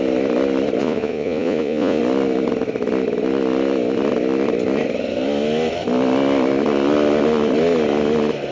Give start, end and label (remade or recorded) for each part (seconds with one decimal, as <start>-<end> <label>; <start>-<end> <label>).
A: 0.0-0.8 recorded; 0.8-2.0 remade; 2.0-8.5 recorded